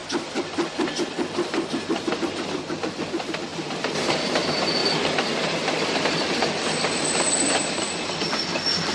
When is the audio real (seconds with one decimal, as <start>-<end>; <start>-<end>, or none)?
0.0-3.5; 4.2-4.8; 7.8-8.9